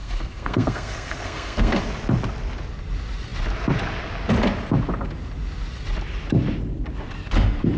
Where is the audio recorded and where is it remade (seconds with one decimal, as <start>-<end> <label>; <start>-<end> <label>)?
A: 0.0-1.8 remade; 1.8-7.8 recorded